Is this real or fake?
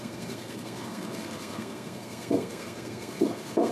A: fake